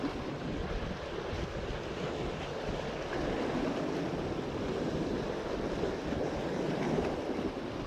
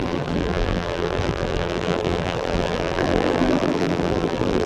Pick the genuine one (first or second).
first